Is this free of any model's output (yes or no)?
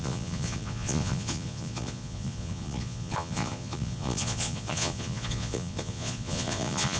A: no